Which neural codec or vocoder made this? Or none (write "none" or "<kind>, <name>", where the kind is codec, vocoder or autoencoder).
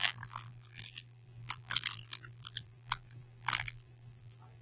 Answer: vocoder, BigVGAN v2